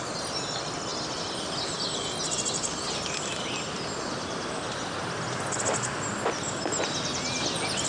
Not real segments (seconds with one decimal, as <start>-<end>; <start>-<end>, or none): none